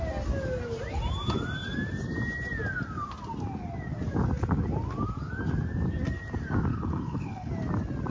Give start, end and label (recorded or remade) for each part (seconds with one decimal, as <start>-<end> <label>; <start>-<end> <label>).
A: 0.0-6.7 recorded; 6.7-7.5 remade; 7.5-8.1 recorded